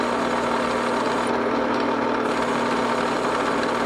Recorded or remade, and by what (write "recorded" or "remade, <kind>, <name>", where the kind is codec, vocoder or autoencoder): recorded